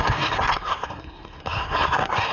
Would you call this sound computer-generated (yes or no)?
yes